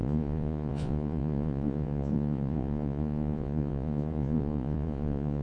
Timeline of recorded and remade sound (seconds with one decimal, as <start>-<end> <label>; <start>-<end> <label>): 0.0-5.4 remade